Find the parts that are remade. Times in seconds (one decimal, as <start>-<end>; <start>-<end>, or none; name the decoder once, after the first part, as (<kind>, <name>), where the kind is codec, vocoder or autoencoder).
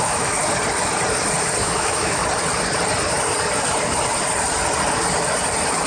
0.0-0.4 (autoencoder, DAC-VAE); 1.6-2.2